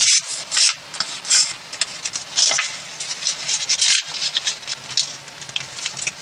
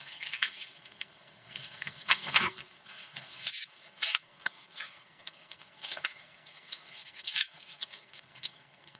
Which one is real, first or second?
first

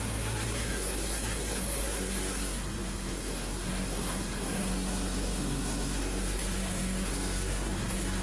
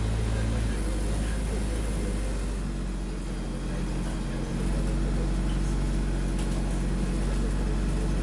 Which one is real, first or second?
second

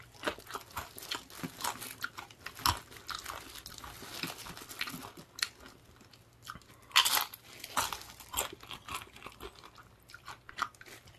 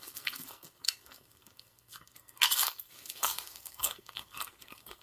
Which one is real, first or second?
first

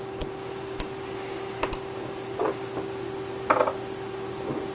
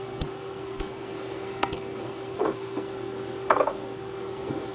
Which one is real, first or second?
first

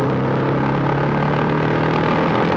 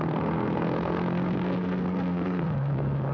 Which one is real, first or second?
first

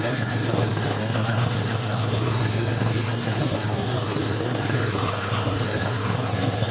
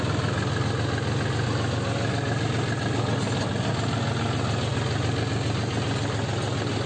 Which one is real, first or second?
second